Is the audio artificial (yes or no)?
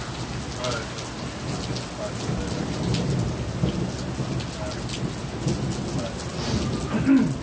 no